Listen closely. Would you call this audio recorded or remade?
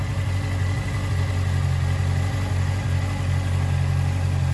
recorded